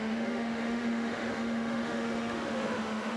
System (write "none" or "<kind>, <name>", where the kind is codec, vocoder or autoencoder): autoencoder, DAC-VAE